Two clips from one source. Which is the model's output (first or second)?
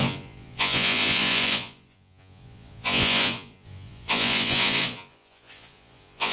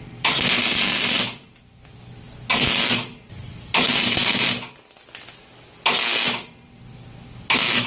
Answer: first